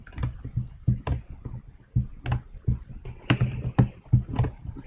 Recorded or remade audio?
recorded